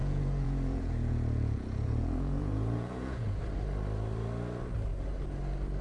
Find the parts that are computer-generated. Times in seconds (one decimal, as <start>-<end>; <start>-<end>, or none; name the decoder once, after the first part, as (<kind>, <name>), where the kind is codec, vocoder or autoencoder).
0.0-3.4 (vocoder, Vocos)